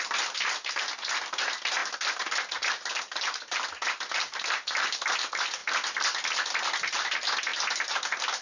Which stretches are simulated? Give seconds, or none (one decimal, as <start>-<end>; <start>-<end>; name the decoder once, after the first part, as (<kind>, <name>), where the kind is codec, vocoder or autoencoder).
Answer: none

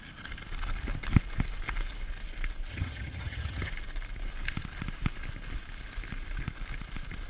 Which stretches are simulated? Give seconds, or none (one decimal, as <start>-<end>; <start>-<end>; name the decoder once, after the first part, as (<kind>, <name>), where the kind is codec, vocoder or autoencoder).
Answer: 2.7-3.7 (vocoder, HiFi-GAN)